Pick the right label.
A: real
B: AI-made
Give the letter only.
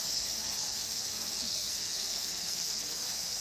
B